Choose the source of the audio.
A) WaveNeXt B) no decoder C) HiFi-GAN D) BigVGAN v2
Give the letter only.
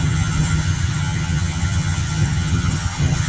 C